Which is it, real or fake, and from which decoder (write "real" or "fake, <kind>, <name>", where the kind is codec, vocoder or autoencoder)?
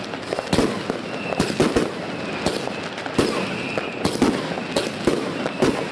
real